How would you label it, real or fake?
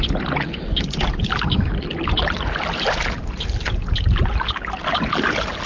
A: real